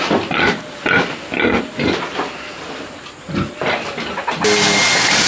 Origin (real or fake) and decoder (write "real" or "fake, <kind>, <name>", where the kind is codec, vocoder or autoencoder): real